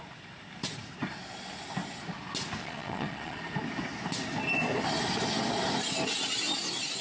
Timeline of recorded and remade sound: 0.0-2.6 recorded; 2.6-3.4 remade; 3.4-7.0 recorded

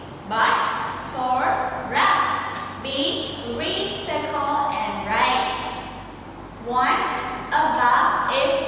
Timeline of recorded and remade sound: 0.0-5.4 recorded; 5.4-6.3 remade; 6.3-8.7 recorded

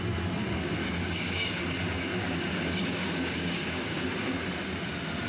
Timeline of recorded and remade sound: 0.0-0.8 recorded; 0.8-1.6 remade; 1.6-2.1 recorded; 2.1-4.4 remade; 4.4-5.3 recorded

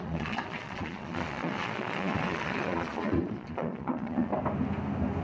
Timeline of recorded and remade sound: 0.0-4.3 remade; 4.3-5.2 recorded

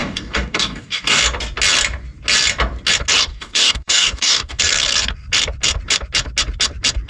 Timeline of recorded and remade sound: 0.0-1.2 remade; 1.2-3.3 recorded; 3.3-4.6 remade; 4.6-7.1 recorded